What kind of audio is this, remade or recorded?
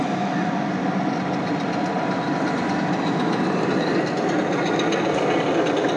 recorded